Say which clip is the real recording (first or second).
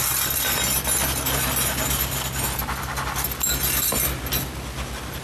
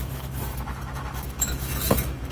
first